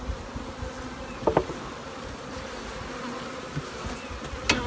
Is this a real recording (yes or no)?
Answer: yes